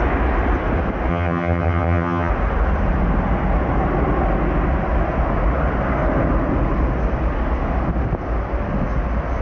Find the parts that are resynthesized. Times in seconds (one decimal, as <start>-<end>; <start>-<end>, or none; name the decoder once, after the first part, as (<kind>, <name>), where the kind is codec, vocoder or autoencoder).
1.1-2.3 (vocoder, HiFi-GAN)